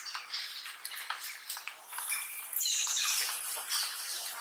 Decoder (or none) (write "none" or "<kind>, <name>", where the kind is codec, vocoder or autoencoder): vocoder, BigVGAN v2